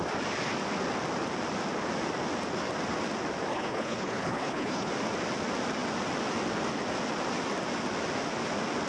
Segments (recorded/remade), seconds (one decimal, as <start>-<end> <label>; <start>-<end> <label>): 0.0-3.5 recorded; 3.5-4.9 remade; 4.9-8.9 recorded